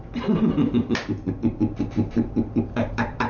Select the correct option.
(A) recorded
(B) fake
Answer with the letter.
B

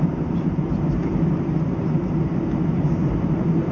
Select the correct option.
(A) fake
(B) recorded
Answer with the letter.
A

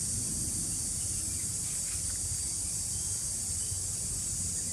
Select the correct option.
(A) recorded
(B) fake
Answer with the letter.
A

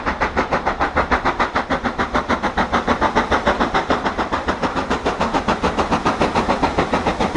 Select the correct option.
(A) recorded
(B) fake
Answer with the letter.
B